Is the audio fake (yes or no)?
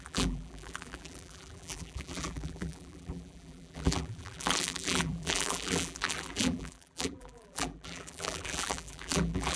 yes